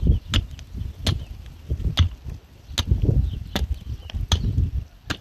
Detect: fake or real real